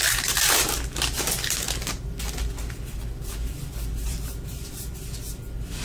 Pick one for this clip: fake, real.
fake